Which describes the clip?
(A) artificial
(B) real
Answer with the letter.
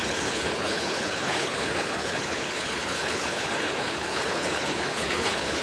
A